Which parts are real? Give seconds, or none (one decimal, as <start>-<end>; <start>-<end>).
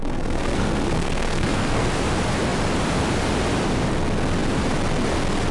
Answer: 1.9-5.5